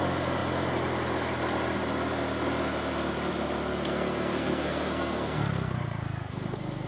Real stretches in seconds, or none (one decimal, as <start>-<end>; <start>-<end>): 0.0-3.7